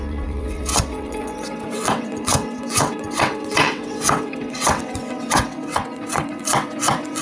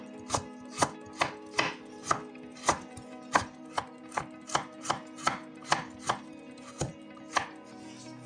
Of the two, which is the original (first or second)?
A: second